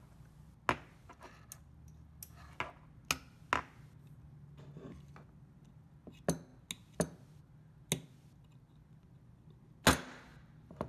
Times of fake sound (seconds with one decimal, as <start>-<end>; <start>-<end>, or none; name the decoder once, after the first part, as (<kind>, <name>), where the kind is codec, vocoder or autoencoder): none